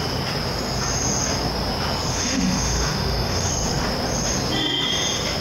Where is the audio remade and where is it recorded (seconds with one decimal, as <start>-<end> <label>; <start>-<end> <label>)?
0.0-2.1 recorded; 2.1-3.5 remade; 3.5-5.4 recorded